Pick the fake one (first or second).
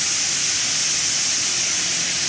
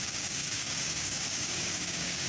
second